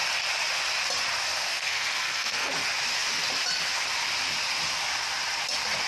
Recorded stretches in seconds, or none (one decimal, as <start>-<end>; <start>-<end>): 0.0-1.5; 2.5-5.9